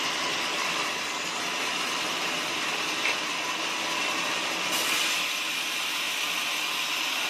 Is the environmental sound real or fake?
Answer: fake